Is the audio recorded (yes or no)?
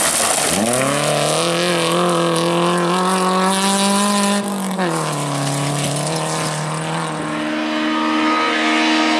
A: yes